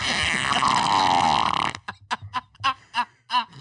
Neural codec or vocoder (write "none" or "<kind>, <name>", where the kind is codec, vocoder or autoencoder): none